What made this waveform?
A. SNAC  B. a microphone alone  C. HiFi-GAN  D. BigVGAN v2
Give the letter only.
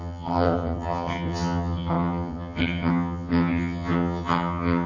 C